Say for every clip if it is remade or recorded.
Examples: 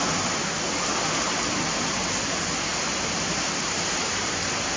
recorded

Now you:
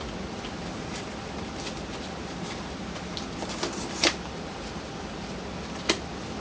recorded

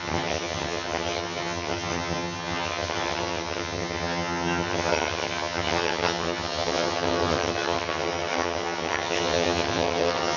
remade